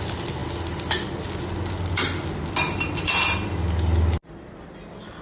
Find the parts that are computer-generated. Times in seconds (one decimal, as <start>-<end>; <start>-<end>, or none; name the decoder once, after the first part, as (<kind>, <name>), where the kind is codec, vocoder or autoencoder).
none